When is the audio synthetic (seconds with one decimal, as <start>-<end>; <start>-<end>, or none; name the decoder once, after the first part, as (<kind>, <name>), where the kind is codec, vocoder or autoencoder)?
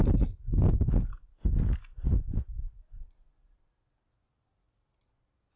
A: none